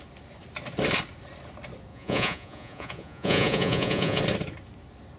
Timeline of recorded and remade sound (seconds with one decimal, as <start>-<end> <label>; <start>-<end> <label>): 0.0-1.9 recorded; 1.9-4.2 remade; 4.2-5.2 recorded